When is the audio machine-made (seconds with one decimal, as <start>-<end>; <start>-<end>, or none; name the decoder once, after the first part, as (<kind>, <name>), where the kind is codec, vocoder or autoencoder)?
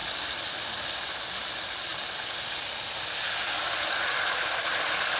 none